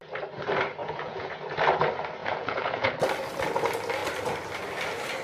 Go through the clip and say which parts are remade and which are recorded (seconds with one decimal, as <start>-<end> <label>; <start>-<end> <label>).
0.0-0.8 recorded; 0.8-1.3 remade; 1.3-2.2 recorded; 2.2-2.9 remade; 2.9-5.2 recorded